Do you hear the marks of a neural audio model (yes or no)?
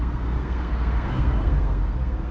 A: yes